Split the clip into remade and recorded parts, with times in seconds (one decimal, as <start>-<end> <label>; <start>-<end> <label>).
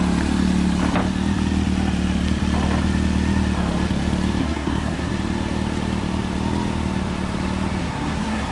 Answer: 0.0-4.4 recorded; 4.4-5.1 remade; 5.1-7.8 recorded; 7.8-8.5 remade